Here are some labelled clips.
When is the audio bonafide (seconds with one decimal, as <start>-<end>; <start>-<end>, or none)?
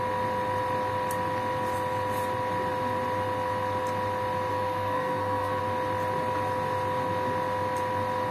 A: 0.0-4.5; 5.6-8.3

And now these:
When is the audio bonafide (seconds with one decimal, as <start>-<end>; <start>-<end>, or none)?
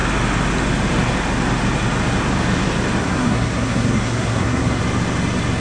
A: 0.0-3.0; 4.8-5.6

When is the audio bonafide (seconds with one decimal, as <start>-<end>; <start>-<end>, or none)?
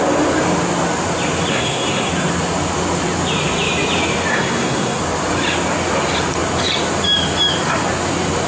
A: 0.0-1.5; 2.1-4.3; 5.0-8.5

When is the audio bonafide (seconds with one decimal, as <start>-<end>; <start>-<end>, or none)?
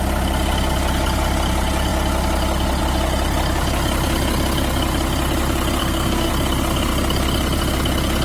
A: 0.0-5.8; 6.3-8.2